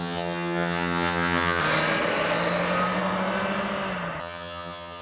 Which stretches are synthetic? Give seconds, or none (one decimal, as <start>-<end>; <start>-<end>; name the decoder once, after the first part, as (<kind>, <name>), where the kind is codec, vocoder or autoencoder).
0.0-1.6 (vocoder, HiFi-GAN); 4.2-5.0